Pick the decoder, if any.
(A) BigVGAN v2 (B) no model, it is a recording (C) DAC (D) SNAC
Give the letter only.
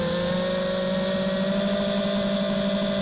B